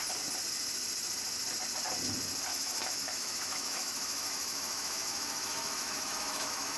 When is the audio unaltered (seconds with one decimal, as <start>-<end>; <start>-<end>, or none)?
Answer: 0.0-2.5